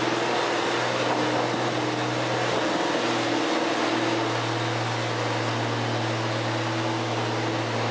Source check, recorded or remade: recorded